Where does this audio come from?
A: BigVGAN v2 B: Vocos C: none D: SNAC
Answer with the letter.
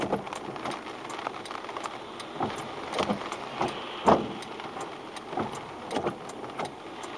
C